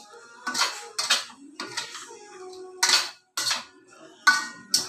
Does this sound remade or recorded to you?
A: recorded